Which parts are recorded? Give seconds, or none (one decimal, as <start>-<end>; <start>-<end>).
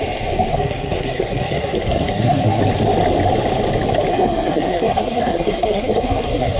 0.0-0.5; 2.6-4.1